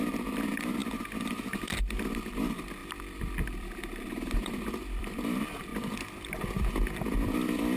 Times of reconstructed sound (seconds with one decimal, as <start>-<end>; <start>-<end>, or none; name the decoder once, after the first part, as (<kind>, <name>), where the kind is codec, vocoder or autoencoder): 0.0-0.8 (vocoder, BigVGAN v2); 1.5-5.7; 7.0-7.8